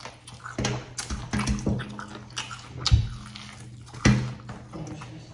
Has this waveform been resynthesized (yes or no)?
no